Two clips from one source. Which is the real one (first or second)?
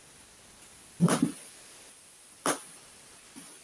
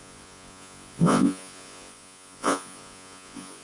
first